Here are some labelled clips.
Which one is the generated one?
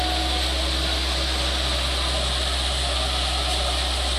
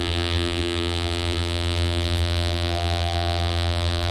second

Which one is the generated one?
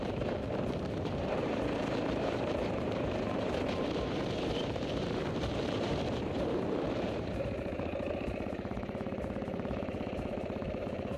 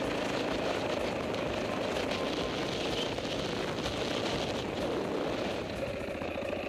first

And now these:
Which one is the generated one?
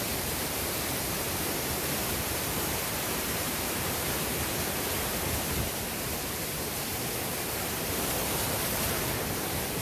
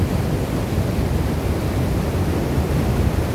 first